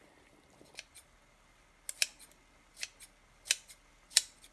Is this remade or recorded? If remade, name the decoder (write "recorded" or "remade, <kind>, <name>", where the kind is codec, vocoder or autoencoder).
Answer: recorded